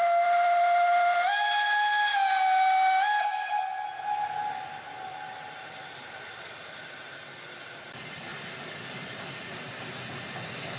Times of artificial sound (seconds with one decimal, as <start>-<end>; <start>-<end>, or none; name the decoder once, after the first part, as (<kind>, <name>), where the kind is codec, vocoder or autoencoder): none